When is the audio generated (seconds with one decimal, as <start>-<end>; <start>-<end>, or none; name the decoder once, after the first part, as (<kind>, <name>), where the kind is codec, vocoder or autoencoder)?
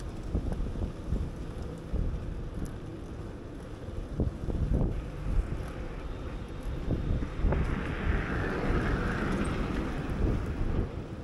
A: none